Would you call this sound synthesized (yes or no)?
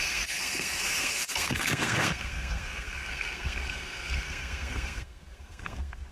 yes